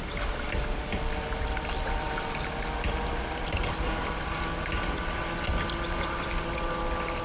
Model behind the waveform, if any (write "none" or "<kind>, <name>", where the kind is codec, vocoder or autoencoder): none